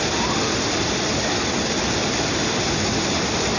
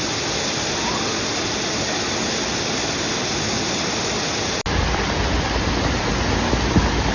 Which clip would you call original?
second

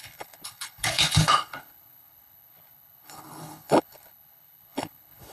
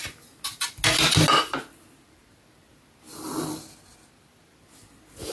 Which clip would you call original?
second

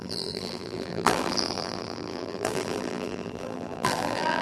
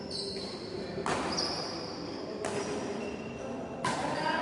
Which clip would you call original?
second